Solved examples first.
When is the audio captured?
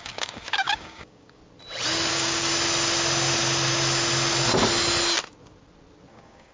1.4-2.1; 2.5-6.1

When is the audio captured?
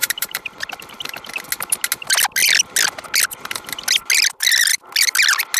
1.3-5.6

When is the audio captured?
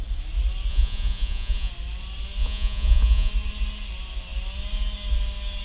0.0-0.7; 1.7-2.4; 3.3-5.6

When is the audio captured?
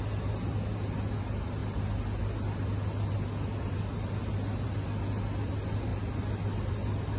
0.0-7.2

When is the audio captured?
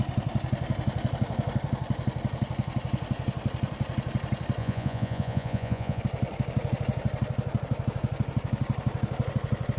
0.0-4.6; 6.0-9.8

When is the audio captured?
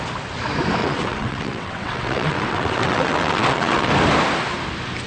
0.0-0.8; 3.9-5.1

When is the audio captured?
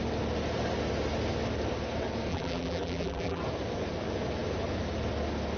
0.0-2.3; 3.4-5.6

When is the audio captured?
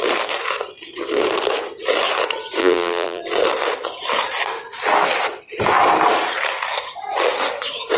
0.0-2.6; 3.2-8.0